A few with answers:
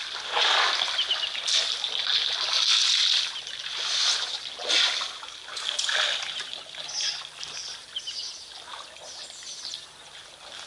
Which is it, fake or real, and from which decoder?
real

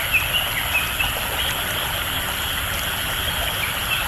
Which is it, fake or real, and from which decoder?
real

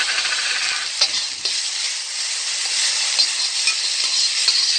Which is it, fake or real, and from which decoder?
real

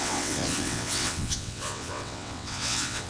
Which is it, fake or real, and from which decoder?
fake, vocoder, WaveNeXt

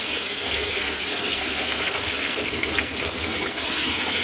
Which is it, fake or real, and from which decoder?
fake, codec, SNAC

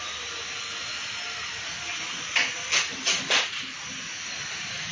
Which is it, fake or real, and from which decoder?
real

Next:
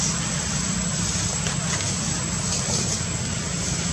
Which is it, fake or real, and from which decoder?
real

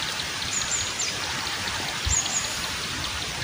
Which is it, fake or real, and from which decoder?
fake, vocoder, BigVGAN v2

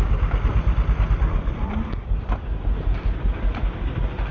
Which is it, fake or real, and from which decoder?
real